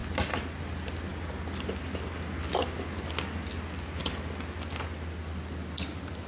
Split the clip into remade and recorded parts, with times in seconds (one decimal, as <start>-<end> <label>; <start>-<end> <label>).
0.0-6.3 recorded